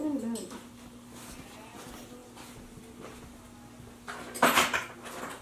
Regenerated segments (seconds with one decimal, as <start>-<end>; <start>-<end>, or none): none